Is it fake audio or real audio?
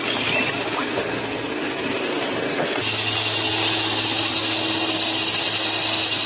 real